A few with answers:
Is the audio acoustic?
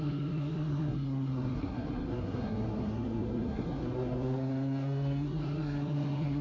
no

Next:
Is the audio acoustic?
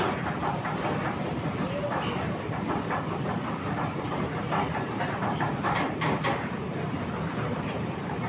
no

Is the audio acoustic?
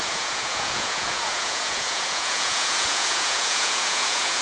no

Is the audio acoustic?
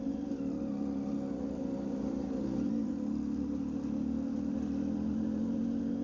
yes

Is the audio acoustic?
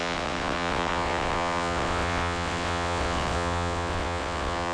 no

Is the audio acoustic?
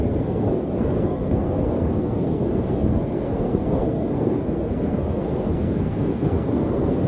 no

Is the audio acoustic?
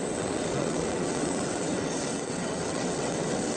no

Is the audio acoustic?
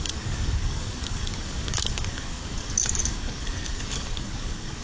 no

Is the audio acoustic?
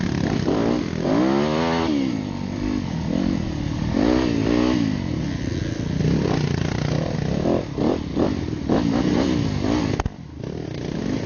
yes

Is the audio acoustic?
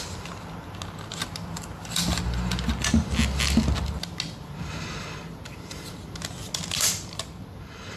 yes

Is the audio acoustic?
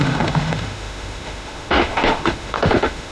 no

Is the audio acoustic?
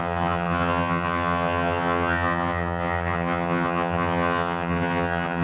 no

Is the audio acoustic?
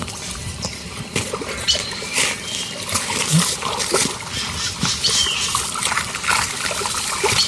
yes